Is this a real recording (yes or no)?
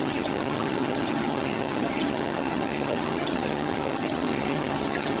no